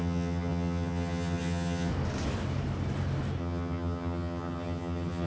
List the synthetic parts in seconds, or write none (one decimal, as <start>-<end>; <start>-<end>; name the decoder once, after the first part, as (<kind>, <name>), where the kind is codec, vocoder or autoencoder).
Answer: 0.0-1.9 (vocoder, HiFi-GAN); 3.4-5.3